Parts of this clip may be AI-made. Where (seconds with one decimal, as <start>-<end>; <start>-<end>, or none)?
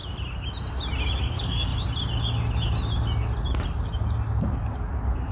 1.2-1.7